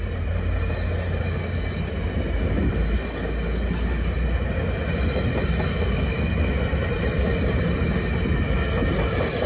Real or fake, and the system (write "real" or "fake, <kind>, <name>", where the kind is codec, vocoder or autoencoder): real